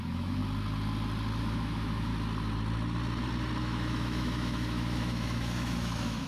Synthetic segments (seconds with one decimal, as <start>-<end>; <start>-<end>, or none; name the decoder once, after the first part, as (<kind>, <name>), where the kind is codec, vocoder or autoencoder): 0.0-0.4 (autoencoder, DAC-VAE); 1.4-2.1; 3.6-6.3